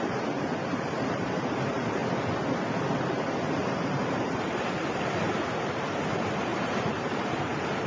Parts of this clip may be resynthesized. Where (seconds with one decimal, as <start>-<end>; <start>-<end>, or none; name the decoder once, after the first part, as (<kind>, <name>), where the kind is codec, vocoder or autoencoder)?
0.0-2.0 (vocoder, BigVGAN v2); 3.1-7.9